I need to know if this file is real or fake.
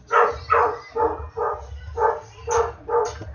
real